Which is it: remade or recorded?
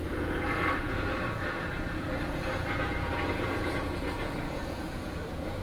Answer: remade